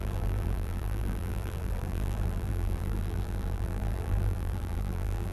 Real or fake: fake